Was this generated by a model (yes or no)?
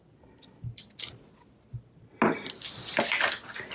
no